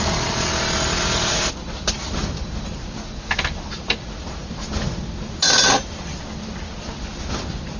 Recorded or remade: recorded